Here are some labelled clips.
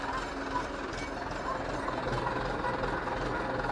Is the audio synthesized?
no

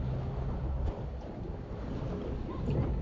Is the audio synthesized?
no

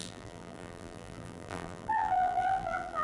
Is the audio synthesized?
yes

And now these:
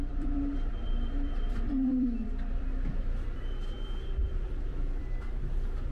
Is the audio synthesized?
yes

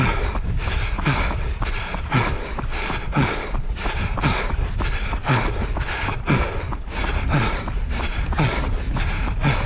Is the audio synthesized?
no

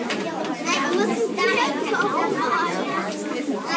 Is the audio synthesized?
yes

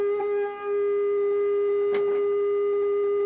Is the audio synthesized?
no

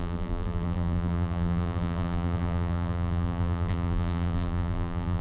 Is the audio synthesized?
yes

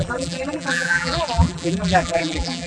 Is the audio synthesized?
yes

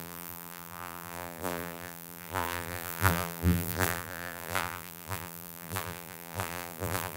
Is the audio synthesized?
yes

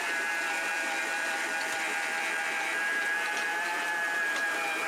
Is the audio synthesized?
yes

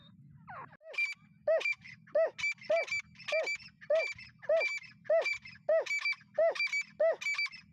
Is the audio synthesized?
no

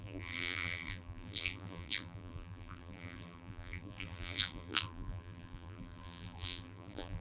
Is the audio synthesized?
yes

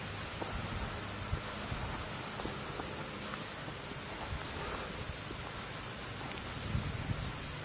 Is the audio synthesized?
no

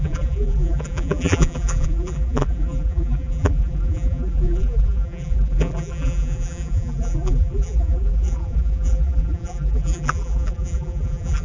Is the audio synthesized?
yes